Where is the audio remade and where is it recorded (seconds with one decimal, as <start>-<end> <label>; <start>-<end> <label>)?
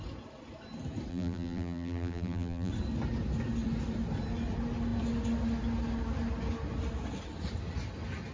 0.0-1.1 recorded; 1.1-2.7 remade; 2.7-8.3 recorded